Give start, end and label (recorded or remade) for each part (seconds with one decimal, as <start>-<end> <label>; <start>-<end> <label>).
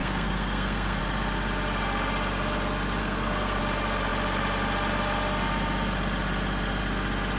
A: 0.0-1.0 remade; 1.0-3.0 recorded; 3.0-3.6 remade; 3.6-7.4 recorded